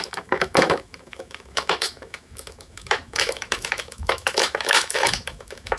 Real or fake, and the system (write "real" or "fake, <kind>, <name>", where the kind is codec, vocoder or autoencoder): fake, autoencoder, DAC-VAE